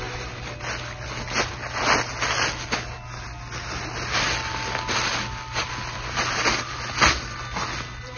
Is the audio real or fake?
real